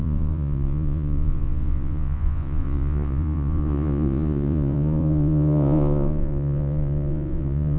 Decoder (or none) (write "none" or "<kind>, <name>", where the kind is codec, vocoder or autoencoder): vocoder, Vocos